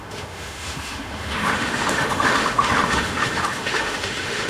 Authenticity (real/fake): fake